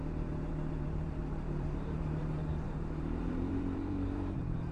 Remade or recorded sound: remade